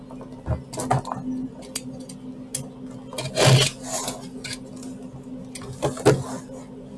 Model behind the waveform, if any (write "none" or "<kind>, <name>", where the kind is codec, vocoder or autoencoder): none